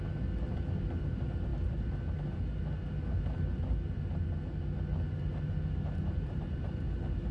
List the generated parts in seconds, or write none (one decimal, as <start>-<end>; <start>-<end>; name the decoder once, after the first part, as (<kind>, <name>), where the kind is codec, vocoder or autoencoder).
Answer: none